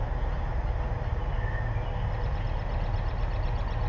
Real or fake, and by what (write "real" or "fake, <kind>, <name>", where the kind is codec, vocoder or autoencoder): real